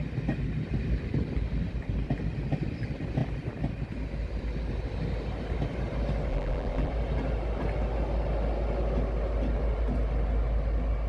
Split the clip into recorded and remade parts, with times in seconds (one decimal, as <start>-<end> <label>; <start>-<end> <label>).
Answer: 0.0-6.3 recorded; 6.3-6.9 remade; 6.9-11.1 recorded